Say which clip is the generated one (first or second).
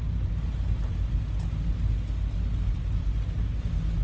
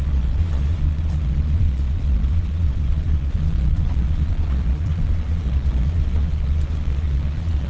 second